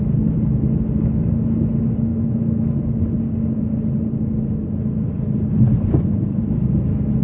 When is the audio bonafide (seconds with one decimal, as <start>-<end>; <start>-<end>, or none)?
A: 0.0-2.1; 2.8-7.2